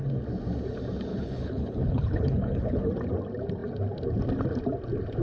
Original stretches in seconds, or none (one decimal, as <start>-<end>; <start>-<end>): 0.0-1.1; 2.9-5.2